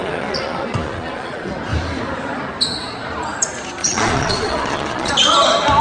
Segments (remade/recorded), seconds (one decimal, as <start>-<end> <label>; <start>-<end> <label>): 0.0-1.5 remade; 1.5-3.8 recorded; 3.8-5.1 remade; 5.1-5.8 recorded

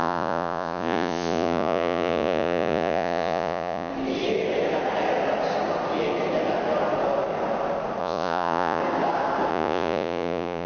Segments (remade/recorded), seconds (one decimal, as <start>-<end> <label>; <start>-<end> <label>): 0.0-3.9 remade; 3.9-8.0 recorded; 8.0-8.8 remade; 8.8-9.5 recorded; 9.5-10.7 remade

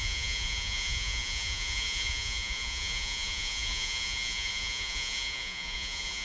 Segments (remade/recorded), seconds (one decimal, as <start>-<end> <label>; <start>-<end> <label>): 0.0-6.2 remade

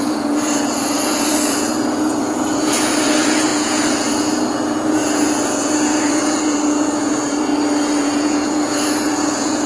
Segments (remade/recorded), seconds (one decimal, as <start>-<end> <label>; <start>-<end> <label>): 0.0-7.5 remade; 7.5-8.0 recorded; 8.0-9.7 remade